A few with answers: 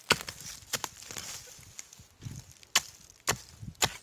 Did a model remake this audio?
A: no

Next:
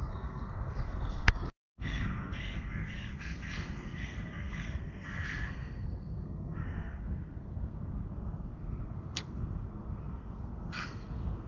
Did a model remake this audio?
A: yes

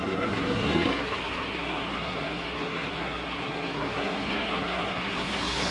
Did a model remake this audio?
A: yes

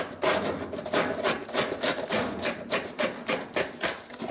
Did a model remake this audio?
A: no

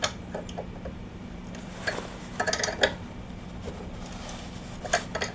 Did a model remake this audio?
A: no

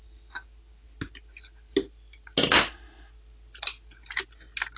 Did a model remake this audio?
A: no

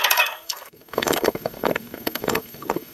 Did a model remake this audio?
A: yes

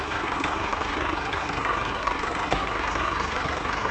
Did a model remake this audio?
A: yes